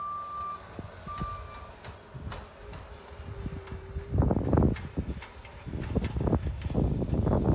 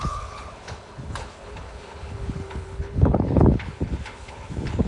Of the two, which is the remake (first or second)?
second